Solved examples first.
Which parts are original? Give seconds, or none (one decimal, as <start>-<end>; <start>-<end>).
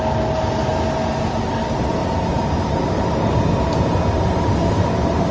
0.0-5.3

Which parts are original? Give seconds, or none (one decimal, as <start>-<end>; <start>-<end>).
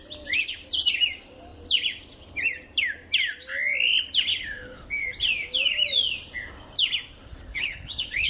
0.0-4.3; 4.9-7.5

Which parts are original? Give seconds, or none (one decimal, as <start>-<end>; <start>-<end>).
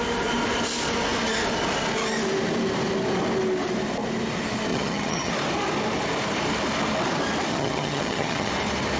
0.0-4.7; 5.3-7.5; 8.5-9.0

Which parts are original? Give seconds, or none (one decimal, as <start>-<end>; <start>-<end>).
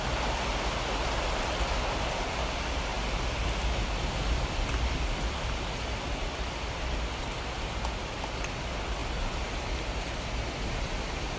0.0-11.4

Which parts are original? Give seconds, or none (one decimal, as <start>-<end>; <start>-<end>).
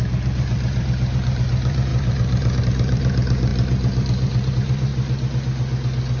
4.9-6.2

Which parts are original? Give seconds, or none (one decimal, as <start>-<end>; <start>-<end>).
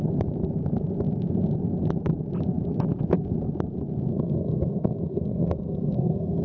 0.0-4.1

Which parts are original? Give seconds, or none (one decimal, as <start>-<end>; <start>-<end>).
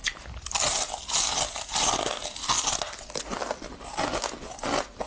0.0-5.1